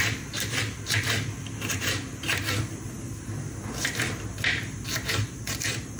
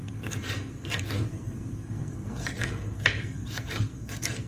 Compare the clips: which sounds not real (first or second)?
second